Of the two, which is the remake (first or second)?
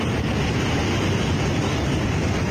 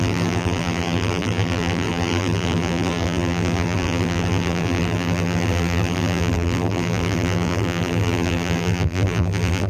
second